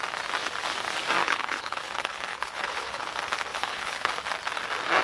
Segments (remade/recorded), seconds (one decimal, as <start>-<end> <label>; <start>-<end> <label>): 0.0-1.2 recorded; 1.2-3.1 remade; 3.1-3.5 recorded; 3.5-4.1 remade; 4.1-5.0 recorded